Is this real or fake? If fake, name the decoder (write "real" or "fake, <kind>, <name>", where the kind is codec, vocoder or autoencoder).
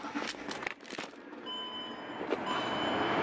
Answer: fake, vocoder, BigVGAN v2